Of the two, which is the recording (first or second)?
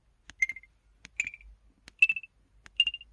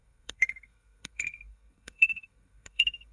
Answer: first